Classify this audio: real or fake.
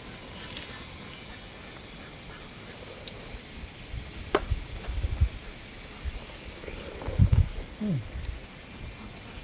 real